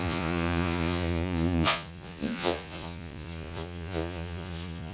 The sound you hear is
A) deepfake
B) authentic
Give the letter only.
A